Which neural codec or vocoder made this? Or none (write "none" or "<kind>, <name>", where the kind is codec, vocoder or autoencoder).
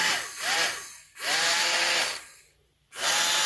none